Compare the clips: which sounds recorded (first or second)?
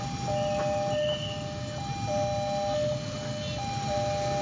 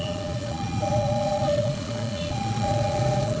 first